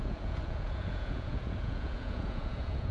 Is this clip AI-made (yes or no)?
yes